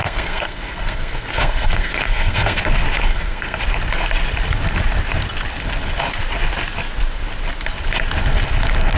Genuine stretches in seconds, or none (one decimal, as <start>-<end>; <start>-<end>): 2.6-3.1; 3.6-9.0